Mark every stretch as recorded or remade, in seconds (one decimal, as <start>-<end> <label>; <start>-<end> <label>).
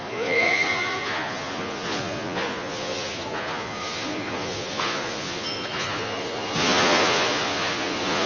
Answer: 0.0-8.3 remade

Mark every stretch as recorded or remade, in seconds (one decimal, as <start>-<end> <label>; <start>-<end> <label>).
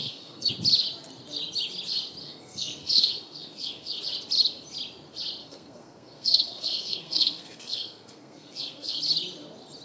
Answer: 0.0-0.5 remade; 0.5-2.2 recorded; 2.2-4.0 remade; 4.0-5.4 recorded; 5.4-9.0 remade; 9.0-9.8 recorded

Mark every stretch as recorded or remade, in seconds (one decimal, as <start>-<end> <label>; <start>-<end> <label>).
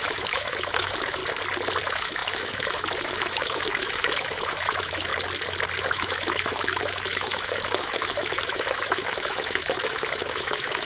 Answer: 0.0-1.2 remade; 1.2-1.8 recorded; 1.8-5.1 remade; 5.1-5.8 recorded; 5.8-10.8 remade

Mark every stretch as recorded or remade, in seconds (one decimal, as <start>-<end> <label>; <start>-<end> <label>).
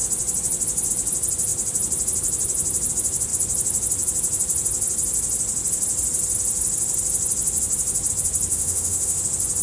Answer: 0.0-8.5 recorded; 8.5-9.2 remade; 9.2-9.6 recorded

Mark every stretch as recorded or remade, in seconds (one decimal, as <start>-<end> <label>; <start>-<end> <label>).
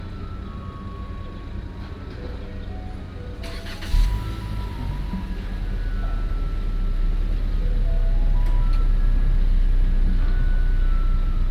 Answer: 0.0-11.5 recorded